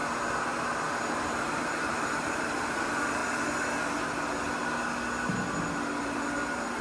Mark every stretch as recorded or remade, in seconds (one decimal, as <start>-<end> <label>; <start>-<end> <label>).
0.0-1.1 recorded; 1.1-3.2 remade; 3.2-6.0 recorded; 6.0-6.8 remade